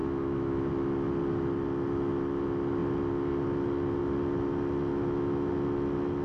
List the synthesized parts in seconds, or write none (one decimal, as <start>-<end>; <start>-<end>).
0.0-0.7; 4.9-5.5